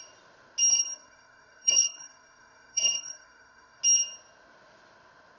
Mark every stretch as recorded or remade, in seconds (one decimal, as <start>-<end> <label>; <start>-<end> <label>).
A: 0.0-0.7 recorded; 0.7-3.8 remade; 3.8-5.4 recorded